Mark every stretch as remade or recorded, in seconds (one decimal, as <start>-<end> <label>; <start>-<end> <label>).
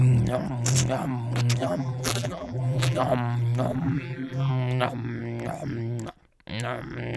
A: 0.0-1.6 recorded; 1.6-3.0 remade; 3.0-3.7 recorded; 3.7-4.5 remade; 4.5-7.2 recorded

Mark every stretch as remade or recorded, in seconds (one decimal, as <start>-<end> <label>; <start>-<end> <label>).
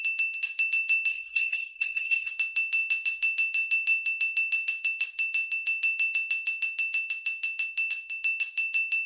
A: 0.0-1.1 recorded; 1.1-2.3 remade; 2.3-9.1 recorded